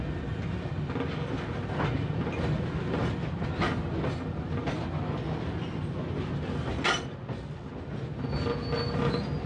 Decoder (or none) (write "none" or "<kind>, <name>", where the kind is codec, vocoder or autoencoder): none